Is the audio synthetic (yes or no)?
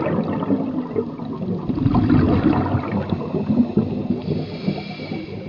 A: no